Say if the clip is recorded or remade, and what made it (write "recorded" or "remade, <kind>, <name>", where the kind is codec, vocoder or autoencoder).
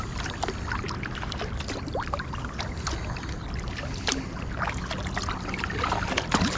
recorded